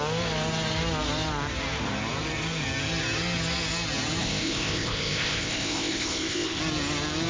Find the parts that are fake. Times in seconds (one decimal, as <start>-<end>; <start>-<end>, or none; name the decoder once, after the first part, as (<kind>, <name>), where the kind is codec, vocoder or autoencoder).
4.2-6.6 (codec, ZipCodec)